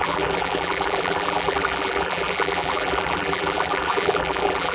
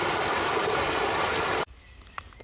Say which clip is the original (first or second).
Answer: second